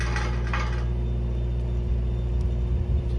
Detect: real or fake real